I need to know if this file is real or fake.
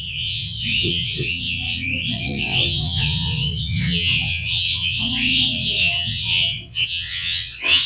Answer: fake